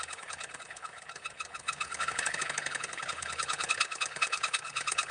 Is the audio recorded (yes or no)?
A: no